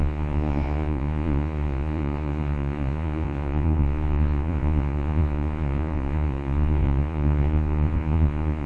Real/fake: fake